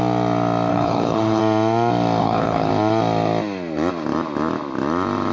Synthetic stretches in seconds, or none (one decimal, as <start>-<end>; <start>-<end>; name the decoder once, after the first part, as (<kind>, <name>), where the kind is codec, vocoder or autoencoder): 0.7-1.4 (codec, HILCodec); 2.2-2.7